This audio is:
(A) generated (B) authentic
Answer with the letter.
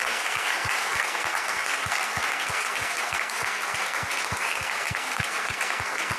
A